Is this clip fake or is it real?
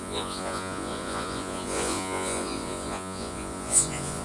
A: fake